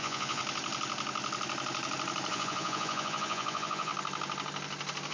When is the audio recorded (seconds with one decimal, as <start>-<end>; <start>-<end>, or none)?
0.4-2.3; 3.9-5.1